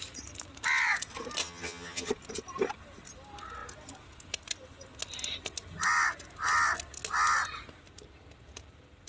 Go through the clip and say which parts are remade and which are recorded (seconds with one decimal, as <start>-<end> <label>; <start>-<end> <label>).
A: 0.0-1.4 recorded; 1.4-2.1 remade; 2.1-9.1 recorded